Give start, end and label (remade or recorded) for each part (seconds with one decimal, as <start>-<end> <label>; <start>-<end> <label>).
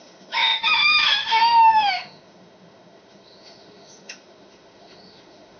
0.0-5.6 remade